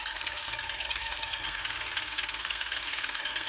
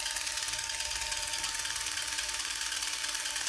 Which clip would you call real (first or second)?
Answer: second